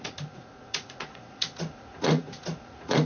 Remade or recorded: remade